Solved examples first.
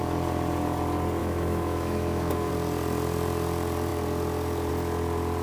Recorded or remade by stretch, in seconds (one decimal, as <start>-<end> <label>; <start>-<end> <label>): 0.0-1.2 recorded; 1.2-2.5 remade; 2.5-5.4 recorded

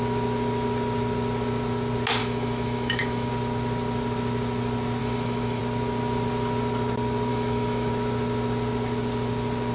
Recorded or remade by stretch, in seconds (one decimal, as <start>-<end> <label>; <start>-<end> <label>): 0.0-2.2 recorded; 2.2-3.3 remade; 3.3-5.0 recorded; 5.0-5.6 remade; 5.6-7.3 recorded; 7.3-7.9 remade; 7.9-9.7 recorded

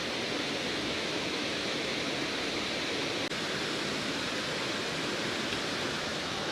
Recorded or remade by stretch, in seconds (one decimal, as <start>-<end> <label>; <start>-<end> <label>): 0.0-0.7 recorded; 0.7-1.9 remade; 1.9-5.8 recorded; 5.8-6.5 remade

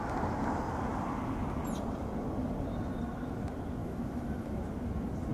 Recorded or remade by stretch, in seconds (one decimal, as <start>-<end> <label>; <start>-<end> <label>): 0.0-3.8 recorded; 3.8-4.6 remade; 4.6-5.3 recorded